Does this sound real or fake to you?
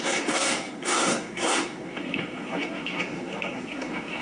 fake